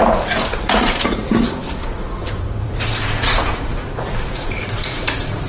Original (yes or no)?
no